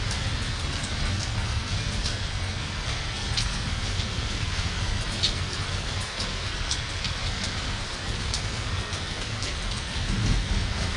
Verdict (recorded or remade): remade